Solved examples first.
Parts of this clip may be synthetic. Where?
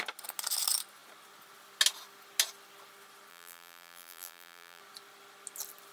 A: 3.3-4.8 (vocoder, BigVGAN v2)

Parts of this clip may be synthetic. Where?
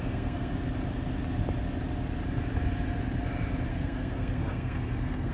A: 0.0-0.5 (codec, SNAC); 3.7-5.3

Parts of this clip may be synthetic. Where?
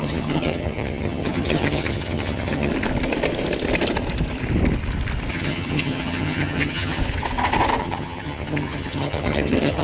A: 0.0-2.7 (vocoder, HiFi-GAN); 5.3-7.0; 7.8-9.8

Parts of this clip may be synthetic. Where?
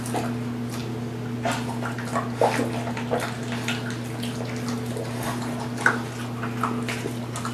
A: none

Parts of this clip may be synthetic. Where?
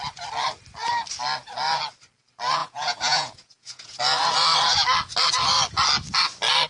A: 2.6-4.0 (vocoder, Vocos)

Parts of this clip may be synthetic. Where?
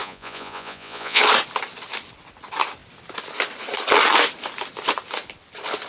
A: 0.0-1.2 (vocoder, Vocos)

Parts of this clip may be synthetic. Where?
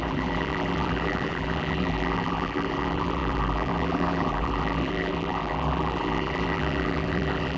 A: 0.0-7.6 (vocoder, BigVGAN v2)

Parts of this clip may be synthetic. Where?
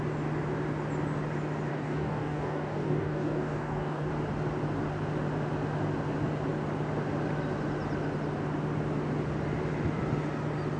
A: 1.7-4.1 (codec, DAC)